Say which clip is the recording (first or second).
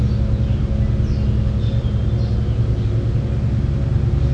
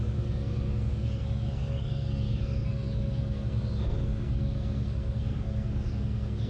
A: first